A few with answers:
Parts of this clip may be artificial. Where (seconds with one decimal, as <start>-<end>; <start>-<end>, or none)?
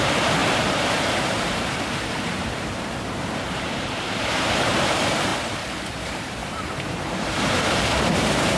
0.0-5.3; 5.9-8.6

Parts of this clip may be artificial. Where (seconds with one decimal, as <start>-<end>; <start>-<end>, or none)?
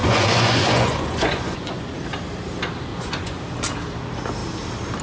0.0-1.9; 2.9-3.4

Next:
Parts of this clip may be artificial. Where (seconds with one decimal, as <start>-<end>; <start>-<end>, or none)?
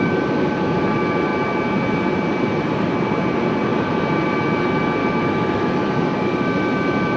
5.0-5.9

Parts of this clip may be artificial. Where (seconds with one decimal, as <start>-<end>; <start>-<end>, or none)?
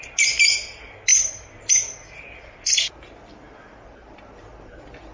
none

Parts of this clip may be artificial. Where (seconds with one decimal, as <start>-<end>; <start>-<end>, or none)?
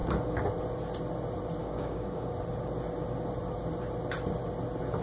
1.6-2.3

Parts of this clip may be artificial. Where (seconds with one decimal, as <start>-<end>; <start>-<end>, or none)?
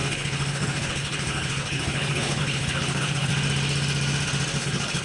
0.0-3.3; 4.6-5.0